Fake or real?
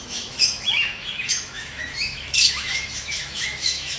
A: fake